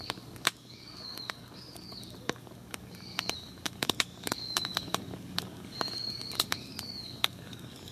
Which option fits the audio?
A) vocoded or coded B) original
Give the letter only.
A